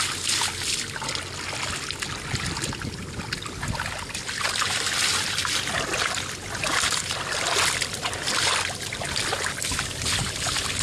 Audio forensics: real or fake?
real